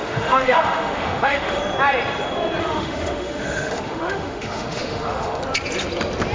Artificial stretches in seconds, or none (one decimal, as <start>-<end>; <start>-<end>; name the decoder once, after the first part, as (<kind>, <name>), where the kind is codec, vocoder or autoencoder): 0.0-1.6 (autoencoder, DAC-VAE); 2.6-5.4